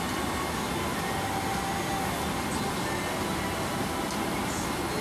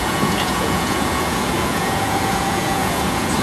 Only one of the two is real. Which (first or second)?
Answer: first